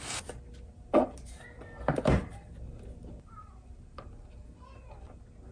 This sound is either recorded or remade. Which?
recorded